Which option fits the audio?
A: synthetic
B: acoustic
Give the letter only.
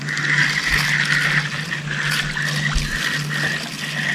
B